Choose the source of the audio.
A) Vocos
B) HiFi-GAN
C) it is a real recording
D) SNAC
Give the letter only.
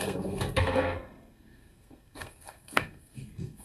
D